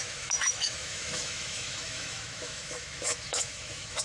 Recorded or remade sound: remade